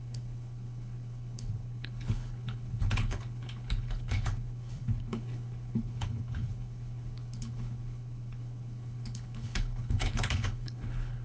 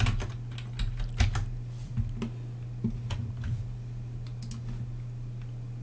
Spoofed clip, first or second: first